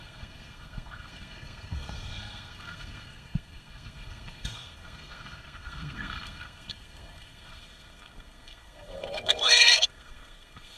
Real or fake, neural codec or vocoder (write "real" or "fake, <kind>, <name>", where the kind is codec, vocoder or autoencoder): fake, codec, SNAC